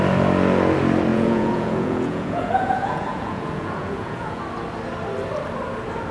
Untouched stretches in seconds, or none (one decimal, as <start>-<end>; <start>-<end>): 0.0-1.1; 4.4-6.1